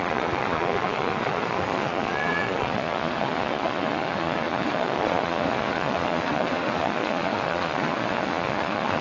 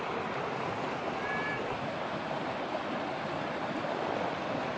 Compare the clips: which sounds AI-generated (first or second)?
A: first